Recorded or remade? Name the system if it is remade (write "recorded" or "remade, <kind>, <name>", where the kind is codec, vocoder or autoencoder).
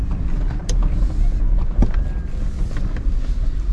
recorded